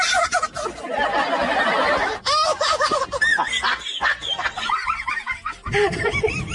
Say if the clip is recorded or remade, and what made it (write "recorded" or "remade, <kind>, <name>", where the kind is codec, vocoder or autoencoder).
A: recorded